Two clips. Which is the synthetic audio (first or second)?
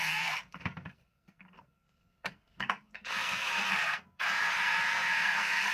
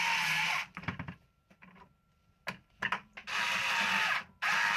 first